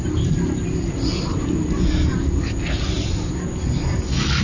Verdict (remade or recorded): recorded